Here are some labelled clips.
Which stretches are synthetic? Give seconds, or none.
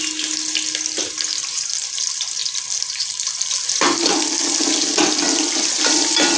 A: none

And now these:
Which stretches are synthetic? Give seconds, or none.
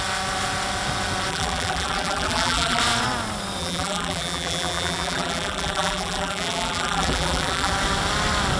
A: 1.3-2.8 (vocoder, BigVGAN v2); 3.6-7.7